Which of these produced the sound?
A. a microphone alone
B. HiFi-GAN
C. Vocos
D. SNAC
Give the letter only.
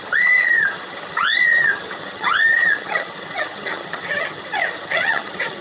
B